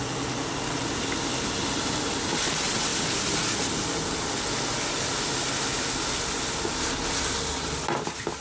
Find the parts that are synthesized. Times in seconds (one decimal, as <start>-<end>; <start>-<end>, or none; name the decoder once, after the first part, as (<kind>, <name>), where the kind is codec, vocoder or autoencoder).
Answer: none